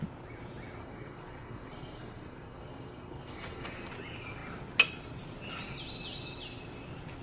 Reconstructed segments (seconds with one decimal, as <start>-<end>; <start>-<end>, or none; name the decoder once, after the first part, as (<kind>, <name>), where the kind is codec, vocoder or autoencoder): 0.8-3.9 (codec, SNAC)